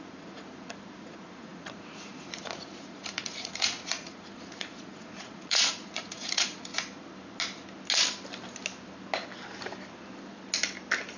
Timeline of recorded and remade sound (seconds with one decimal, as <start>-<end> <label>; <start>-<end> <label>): 0.0-6.7 remade; 6.7-11.2 recorded